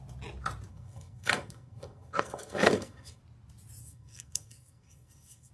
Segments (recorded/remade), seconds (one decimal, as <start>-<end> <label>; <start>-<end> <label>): 0.0-0.7 recorded; 0.7-3.2 remade; 3.2-3.8 recorded; 3.8-5.5 remade